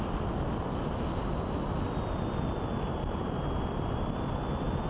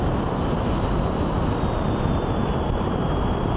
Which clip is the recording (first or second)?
first